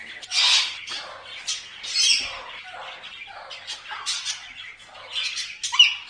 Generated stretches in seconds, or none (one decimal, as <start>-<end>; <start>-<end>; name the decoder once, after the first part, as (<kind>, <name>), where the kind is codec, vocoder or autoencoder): none